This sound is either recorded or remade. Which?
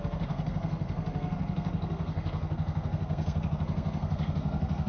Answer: remade